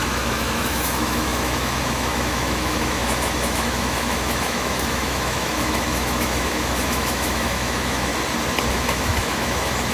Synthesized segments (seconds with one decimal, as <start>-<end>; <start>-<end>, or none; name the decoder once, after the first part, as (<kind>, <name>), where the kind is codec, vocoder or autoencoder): 0.0-8.1 (autoencoder, DAC-VAE); 8.7-9.9